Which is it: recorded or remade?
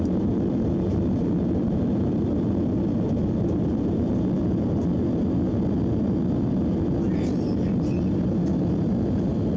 recorded